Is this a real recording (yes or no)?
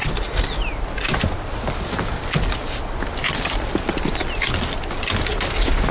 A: yes